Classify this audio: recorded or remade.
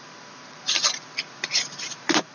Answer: remade